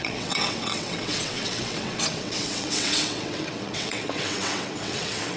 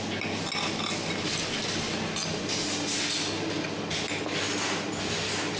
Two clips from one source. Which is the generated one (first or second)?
first